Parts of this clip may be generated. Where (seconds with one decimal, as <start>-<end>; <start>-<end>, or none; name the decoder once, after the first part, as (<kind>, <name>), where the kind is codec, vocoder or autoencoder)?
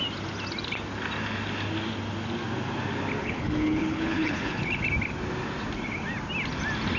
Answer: 3.2-4.8 (codec, HILCodec)